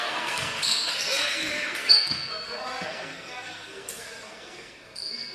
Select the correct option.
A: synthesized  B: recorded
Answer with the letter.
A